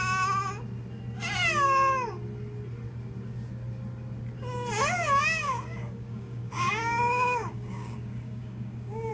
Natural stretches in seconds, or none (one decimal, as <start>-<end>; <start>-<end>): 0.0-5.2